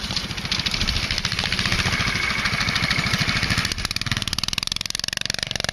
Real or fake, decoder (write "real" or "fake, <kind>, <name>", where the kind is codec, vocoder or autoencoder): real